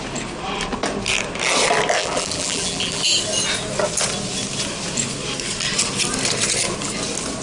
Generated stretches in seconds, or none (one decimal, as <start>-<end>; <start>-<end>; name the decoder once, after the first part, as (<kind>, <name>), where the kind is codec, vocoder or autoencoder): 2.0-3.0 (vocoder, BigVGAN v2)

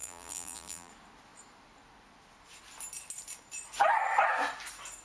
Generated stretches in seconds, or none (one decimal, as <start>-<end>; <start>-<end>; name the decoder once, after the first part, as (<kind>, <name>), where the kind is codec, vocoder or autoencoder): 0.0-0.9 (vocoder, BigVGAN v2)

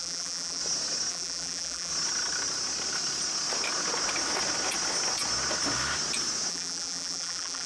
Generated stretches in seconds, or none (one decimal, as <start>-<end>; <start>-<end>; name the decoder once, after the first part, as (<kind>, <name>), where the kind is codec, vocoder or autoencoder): 0.0-0.6 (vocoder, BigVGAN v2); 1.1-1.9; 6.5-7.7

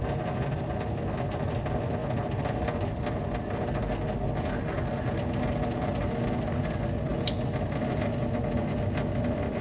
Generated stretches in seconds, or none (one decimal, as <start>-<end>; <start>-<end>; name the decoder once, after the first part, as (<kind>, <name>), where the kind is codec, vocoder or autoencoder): none

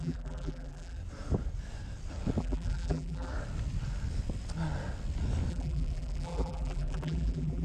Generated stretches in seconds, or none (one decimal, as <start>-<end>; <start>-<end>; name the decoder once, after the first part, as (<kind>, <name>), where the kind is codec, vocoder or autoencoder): 0.0-1.0 (vocoder, BigVGAN v2); 2.4-3.3; 5.5-7.6

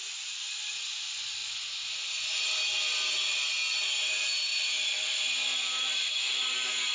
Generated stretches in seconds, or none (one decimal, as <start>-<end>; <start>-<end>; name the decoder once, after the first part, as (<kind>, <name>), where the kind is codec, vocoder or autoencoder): 4.5-6.1 (vocoder, BigVGAN v2)

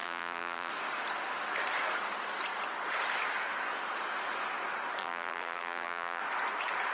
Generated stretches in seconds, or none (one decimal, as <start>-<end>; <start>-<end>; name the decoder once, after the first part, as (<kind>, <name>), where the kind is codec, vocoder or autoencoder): 0.0-0.7 (vocoder, BigVGAN v2); 5.0-6.2

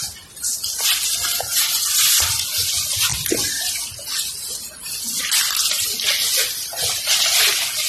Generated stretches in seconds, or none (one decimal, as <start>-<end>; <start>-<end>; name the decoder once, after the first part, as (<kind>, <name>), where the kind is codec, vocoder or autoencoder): none